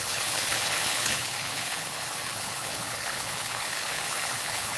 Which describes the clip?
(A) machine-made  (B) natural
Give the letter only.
A